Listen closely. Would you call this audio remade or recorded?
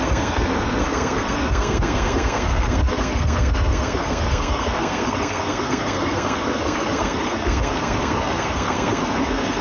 remade